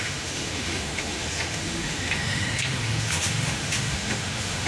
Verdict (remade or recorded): remade